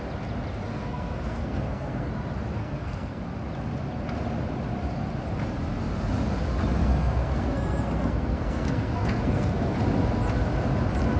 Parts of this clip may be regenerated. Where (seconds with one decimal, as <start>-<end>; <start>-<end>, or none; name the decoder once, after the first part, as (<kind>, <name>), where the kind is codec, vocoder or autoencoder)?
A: 0.7-2.1 (codec, SNAC); 2.6-3.2; 6.8-9.8